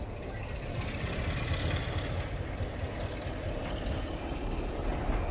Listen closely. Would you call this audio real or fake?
real